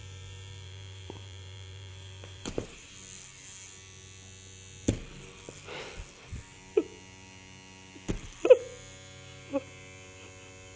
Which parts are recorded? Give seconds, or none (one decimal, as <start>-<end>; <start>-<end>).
2.9-10.8